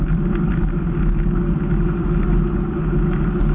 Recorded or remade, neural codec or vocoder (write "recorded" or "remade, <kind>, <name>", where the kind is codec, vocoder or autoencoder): recorded